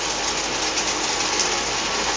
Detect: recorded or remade recorded